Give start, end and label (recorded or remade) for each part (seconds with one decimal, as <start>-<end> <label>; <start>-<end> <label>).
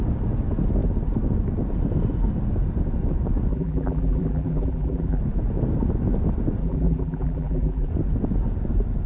0.0-3.5 recorded; 3.5-5.2 remade; 5.2-6.6 recorded; 6.6-7.9 remade; 7.9-9.1 recorded